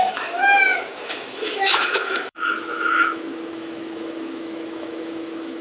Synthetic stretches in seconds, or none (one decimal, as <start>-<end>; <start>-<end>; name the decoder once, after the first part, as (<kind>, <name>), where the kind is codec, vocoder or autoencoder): 0.0-5.6 (autoencoder, DAC-VAE)